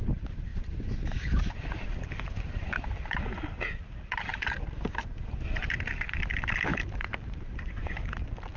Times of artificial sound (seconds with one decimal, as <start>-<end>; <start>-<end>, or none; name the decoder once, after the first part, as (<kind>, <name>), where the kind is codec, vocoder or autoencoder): 0.5-3.2 (vocoder, BigVGAN v2); 6.7-8.0